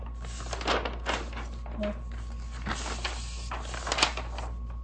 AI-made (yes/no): no